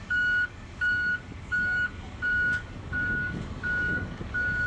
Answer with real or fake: fake